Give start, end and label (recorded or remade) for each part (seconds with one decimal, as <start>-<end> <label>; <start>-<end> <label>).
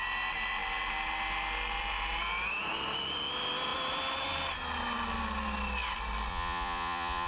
0.0-6.3 recorded; 6.3-7.3 remade